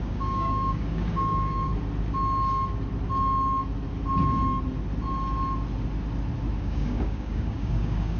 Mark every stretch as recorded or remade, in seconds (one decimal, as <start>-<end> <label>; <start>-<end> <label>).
0.0-1.7 remade; 1.7-6.6 recorded; 6.6-8.2 remade